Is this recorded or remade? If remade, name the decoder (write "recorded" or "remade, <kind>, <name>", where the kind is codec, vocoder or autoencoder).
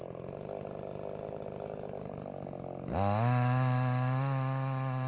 recorded